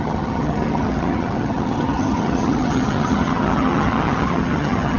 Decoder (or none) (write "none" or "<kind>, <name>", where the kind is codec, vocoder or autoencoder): vocoder, HiFi-GAN